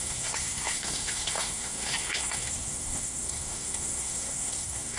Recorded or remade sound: remade